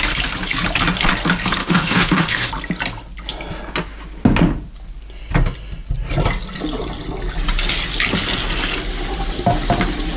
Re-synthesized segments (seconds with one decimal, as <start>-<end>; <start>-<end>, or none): 1.6-2.5